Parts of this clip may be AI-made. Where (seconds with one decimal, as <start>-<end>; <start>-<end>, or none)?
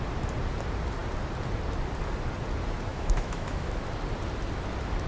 2.9-3.8